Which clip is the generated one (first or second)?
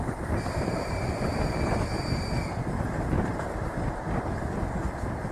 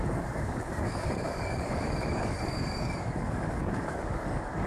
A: second